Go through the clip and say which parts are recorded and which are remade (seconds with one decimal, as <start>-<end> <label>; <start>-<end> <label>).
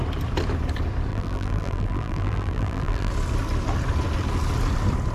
0.0-1.1 recorded; 1.1-3.1 remade; 3.1-5.1 recorded